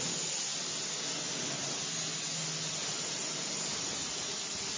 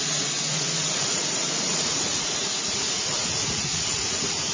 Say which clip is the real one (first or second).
first